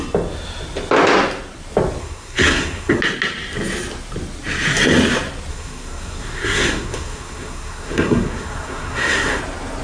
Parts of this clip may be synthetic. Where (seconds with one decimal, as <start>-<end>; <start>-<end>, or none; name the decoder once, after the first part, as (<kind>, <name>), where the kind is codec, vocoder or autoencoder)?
2.0-3.0 (codec, SNAC); 5.5-9.4